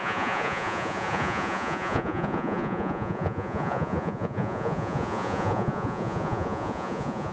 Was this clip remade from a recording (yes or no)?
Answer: yes